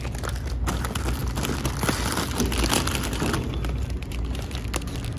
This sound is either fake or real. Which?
real